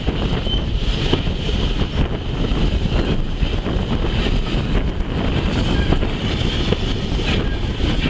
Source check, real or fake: real